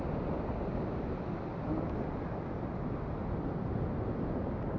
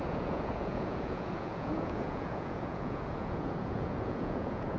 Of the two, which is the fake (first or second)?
second